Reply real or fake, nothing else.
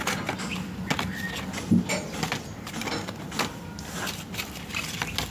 real